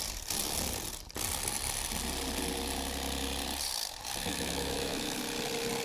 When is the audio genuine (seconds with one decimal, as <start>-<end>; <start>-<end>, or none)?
0.0-4.3; 5.2-5.8